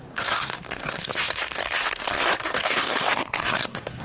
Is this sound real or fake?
fake